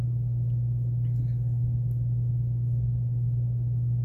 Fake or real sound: real